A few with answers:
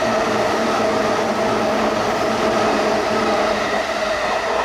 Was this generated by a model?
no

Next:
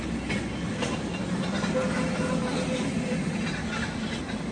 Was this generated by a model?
no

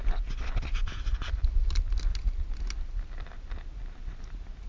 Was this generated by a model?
no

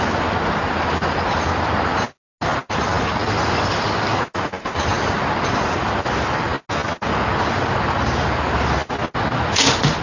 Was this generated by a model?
no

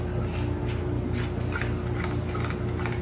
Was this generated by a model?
no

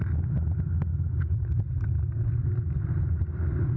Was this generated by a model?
no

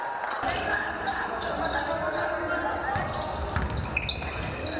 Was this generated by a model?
no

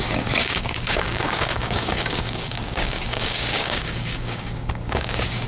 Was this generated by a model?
yes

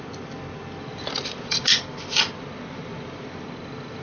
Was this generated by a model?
no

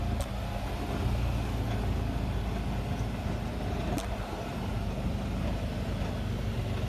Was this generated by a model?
no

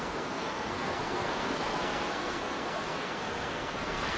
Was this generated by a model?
yes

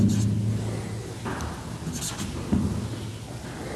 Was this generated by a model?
no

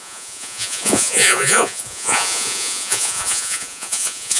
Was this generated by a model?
yes